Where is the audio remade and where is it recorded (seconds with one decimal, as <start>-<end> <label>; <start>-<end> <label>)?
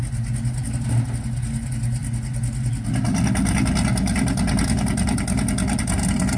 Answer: 0.0-6.4 recorded